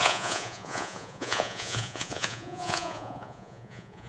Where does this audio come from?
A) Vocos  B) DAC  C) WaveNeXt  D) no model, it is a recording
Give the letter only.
A